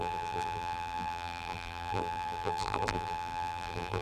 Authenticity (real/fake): fake